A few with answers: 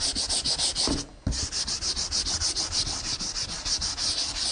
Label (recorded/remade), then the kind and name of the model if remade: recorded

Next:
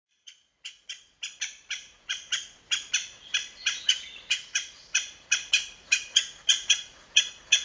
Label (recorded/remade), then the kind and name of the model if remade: remade, vocoder, Vocos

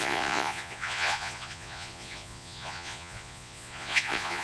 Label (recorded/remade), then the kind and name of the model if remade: remade, vocoder, Vocos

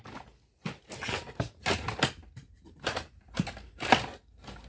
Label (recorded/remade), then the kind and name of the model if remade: recorded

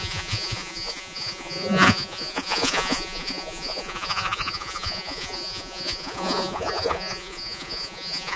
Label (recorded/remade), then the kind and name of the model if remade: remade, vocoder, Vocos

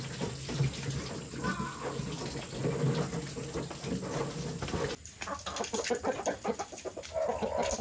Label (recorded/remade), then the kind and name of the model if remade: recorded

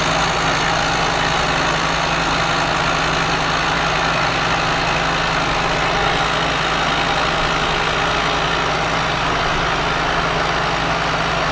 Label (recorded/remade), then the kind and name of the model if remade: recorded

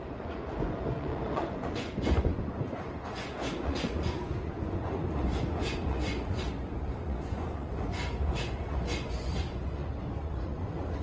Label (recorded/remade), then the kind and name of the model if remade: remade, vocoder, Vocos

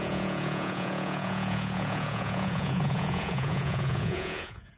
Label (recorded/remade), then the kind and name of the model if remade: remade, vocoder, Vocos